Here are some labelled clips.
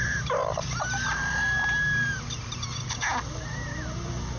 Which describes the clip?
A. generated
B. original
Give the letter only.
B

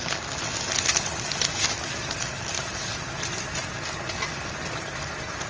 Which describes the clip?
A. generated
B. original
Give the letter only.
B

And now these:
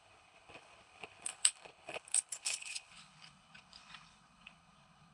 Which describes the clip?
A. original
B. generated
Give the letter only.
B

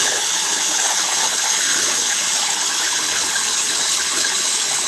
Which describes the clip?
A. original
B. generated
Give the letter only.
B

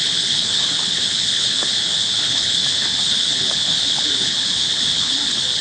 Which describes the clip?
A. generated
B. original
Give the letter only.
A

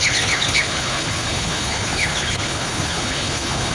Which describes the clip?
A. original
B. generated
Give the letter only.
B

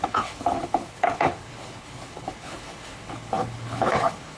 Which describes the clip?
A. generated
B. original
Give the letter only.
A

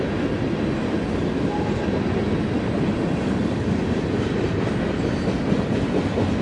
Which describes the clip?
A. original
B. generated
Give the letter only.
A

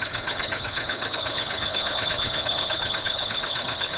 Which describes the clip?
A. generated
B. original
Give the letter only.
A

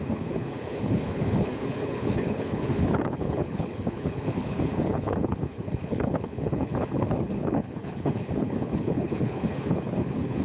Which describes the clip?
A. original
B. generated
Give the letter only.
B